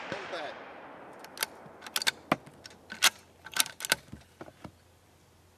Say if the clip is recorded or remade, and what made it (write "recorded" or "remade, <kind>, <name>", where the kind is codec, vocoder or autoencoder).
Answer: recorded